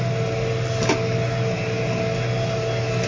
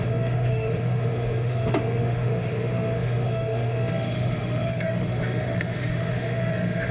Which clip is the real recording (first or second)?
first